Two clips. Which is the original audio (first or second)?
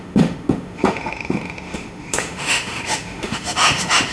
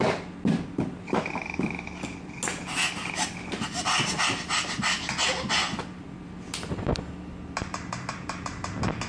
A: second